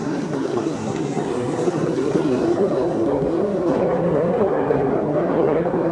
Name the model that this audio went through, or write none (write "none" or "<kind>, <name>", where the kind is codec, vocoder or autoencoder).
codec, SNAC